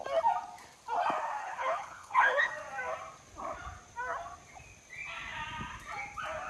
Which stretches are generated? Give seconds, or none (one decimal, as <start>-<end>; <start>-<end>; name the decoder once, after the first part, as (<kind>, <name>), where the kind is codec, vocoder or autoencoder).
1.4-2.5 (codec, HILCodec)